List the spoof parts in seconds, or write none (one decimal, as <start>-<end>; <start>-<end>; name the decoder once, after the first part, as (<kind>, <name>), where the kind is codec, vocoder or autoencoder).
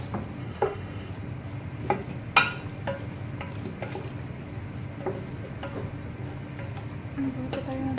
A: 0.4-1.1 (autoencoder, DAC-VAE)